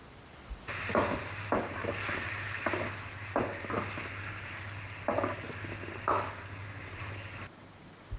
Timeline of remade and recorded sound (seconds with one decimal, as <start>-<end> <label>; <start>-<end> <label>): 0.0-8.2 recorded